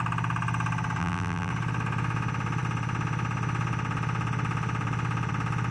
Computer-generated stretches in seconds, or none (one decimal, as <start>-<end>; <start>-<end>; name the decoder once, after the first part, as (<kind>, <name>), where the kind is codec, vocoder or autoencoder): 1.0-1.5 (vocoder, BigVGAN v2)